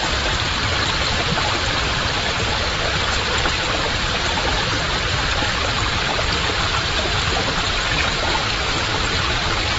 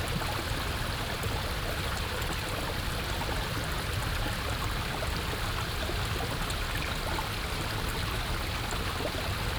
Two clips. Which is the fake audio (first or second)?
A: first